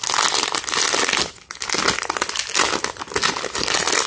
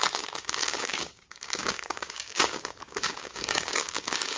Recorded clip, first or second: first